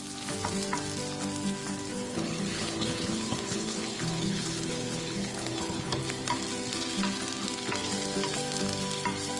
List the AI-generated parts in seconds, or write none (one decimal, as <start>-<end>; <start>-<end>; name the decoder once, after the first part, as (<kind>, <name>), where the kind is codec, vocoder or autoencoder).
1.9-6.0 (codec, HILCodec)